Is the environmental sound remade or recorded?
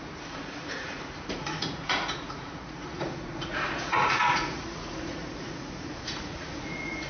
remade